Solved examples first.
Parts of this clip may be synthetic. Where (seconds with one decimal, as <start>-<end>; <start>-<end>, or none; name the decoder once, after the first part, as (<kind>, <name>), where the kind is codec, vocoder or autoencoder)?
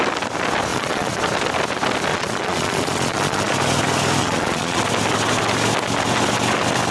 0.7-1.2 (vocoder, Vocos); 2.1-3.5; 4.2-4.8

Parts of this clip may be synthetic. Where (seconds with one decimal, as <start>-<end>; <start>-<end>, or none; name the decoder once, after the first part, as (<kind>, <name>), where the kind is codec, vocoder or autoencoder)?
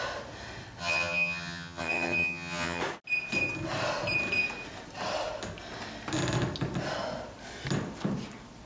0.8-2.8 (vocoder, HiFi-GAN)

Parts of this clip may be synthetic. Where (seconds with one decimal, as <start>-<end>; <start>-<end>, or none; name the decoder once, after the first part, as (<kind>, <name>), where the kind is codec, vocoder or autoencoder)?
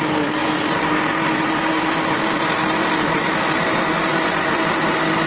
none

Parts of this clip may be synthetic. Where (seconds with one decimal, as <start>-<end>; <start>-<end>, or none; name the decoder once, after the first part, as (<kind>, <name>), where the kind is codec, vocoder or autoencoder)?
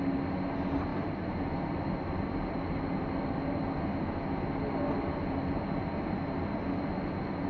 none